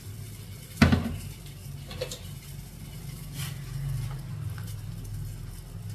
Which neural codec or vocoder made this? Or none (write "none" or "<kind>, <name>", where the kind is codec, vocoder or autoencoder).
none